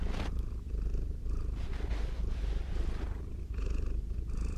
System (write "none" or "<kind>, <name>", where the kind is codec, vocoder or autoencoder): none